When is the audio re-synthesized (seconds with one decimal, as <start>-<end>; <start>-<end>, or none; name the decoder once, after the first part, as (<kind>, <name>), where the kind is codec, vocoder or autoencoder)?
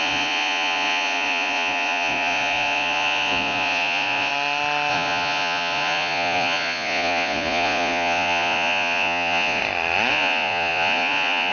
0.0-4.3 (vocoder, Vocos); 4.9-9.6; 10.1-11.5